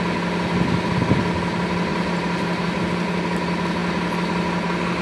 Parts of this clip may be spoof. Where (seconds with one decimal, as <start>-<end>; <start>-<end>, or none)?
1.9-2.8